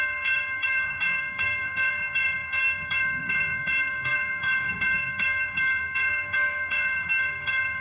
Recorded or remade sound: remade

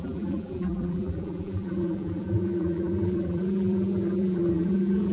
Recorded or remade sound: remade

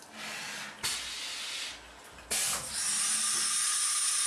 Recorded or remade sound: recorded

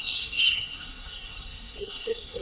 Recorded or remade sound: remade